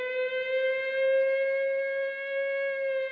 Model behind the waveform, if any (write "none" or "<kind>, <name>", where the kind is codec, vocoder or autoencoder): none